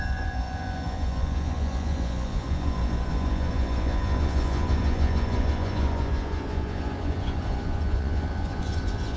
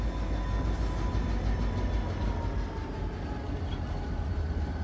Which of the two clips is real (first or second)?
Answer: second